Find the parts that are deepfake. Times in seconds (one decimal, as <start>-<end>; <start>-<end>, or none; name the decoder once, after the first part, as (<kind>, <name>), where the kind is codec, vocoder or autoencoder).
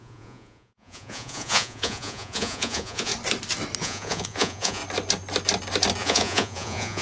0.0-3.1 (vocoder, Vocos); 3.8-4.8; 6.0-7.0